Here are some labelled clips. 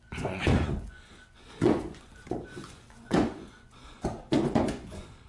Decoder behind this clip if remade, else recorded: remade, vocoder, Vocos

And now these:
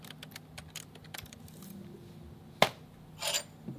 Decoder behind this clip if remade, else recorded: recorded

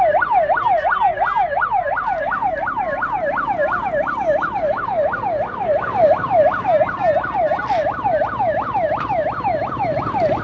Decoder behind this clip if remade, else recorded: recorded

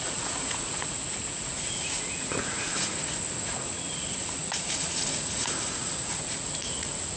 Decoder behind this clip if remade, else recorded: remade, vocoder, Vocos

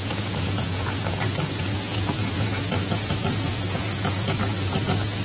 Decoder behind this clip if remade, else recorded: remade, vocoder, Vocos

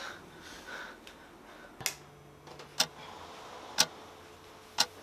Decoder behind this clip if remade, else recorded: recorded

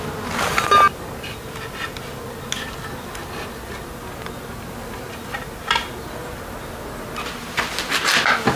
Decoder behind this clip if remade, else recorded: recorded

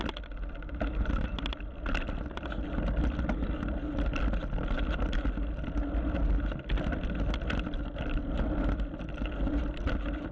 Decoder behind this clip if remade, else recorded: recorded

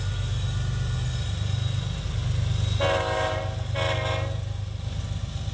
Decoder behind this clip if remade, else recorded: recorded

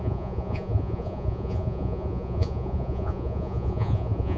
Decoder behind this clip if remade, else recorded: remade, vocoder, Vocos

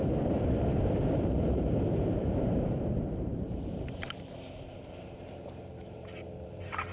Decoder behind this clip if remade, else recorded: remade, vocoder, BigVGAN v2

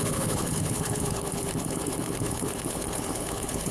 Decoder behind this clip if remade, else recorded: remade, codec, HILCodec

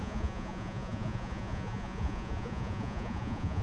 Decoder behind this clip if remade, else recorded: remade, vocoder, Vocos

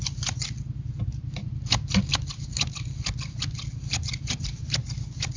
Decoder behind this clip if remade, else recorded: recorded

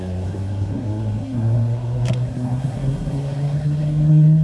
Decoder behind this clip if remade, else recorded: remade, codec, SNAC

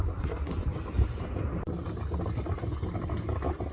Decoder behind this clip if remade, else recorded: recorded